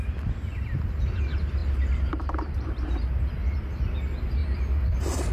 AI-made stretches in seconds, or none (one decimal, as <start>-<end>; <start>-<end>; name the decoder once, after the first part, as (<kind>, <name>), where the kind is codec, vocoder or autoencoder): 1.6-3.1 (vocoder, BigVGAN v2)